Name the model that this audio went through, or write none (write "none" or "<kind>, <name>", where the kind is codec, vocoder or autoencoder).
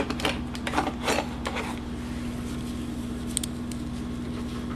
none